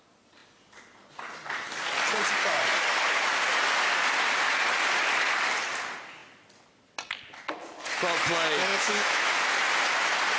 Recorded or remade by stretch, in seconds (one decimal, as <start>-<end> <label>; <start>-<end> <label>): 0.0-8.7 recorded; 8.7-9.3 remade; 9.3-10.4 recorded